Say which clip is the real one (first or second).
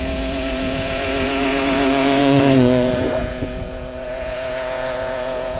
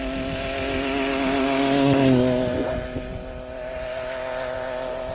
second